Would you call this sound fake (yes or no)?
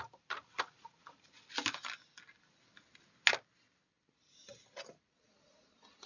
no